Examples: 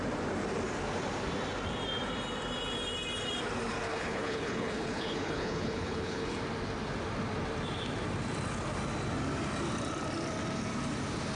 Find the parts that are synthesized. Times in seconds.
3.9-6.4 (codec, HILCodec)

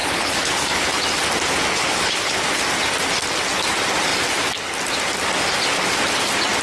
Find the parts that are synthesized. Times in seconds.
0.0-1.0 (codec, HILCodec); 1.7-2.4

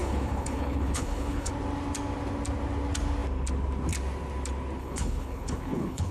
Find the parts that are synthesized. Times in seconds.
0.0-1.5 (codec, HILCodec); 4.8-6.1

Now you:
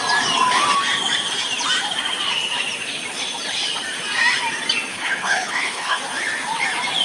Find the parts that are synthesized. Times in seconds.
4.9-6.0 (codec, HILCodec)

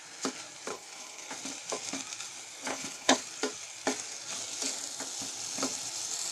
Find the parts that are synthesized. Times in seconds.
0.7-1.3 (codec, HILCodec); 2.7-3.2

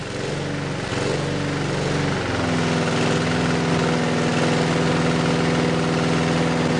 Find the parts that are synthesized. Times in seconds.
none

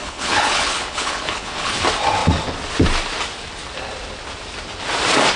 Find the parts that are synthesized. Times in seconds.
0.0-1.8 (codec, HILCodec)

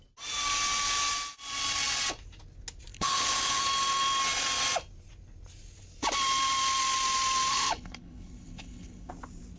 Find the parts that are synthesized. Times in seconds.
2.9-3.6 (codec, HILCodec); 7.5-9.1